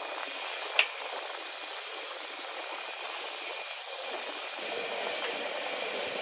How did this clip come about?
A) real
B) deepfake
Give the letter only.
A